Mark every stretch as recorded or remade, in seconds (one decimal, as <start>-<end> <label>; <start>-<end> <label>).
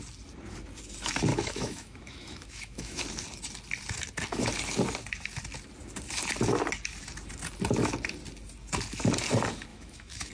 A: 0.0-1.3 recorded; 1.3-3.0 remade; 3.0-9.7 recorded; 9.7-10.3 remade